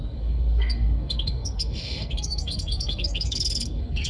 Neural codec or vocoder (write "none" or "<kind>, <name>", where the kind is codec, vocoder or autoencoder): codec, SNAC